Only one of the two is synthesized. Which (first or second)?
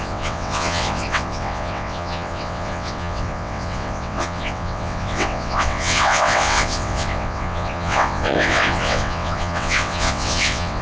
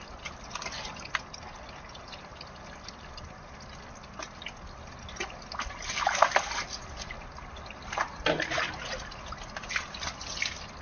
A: first